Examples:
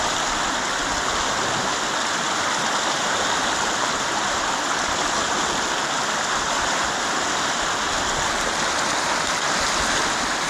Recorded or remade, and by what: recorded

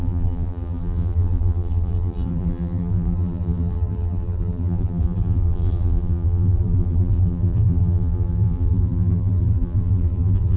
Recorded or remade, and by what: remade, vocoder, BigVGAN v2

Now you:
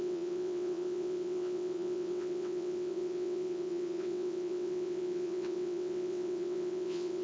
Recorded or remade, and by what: remade, vocoder, WaveNeXt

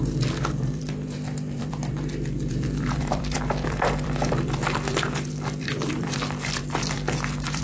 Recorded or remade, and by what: remade, vocoder, BigVGAN v2